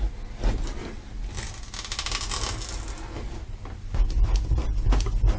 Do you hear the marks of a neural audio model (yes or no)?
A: no